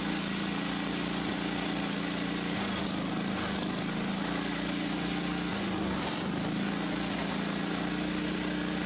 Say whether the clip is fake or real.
real